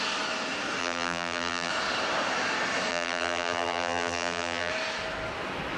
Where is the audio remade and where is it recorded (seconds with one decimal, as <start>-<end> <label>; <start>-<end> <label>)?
0.0-0.8 recorded; 0.8-1.7 remade; 1.7-2.9 recorded; 2.9-4.7 remade; 4.7-5.8 recorded